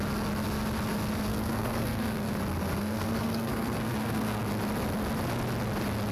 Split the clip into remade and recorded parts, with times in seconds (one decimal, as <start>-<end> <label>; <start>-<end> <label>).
0.0-1.3 recorded; 1.3-2.4 remade; 2.4-2.8 recorded; 2.8-4.4 remade; 4.4-6.1 recorded